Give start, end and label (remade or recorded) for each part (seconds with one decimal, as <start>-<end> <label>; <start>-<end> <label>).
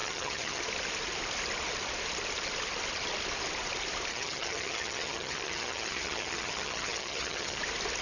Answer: 0.0-0.6 remade; 0.6-4.1 recorded; 4.1-7.6 remade; 7.6-8.0 recorded